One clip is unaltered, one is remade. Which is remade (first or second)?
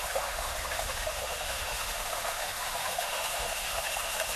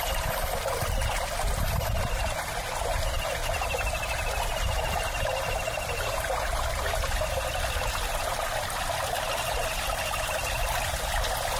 first